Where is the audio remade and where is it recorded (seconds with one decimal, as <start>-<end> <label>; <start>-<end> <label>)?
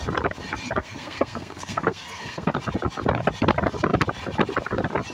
0.0-0.8 recorded; 0.8-2.6 remade; 2.6-5.1 recorded